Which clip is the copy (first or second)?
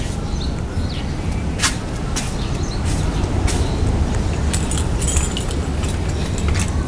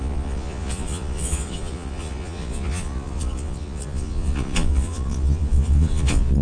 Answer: second